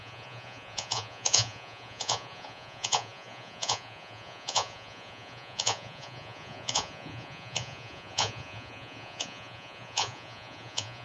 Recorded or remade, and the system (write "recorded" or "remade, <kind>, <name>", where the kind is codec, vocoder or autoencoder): remade, vocoder, Vocos